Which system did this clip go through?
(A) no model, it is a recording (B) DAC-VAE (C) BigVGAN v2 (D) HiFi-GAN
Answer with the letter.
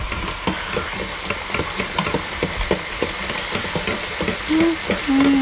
A